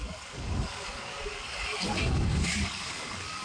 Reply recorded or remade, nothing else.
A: remade